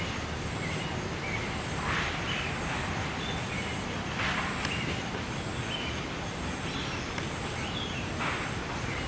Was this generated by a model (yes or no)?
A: no